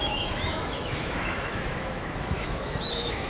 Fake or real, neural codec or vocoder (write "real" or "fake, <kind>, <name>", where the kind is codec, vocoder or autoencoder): fake, autoencoder, DAC-VAE